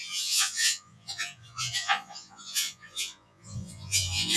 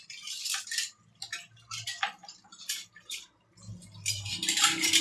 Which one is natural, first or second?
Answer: second